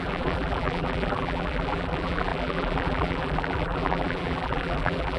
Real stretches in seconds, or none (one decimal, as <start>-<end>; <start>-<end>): none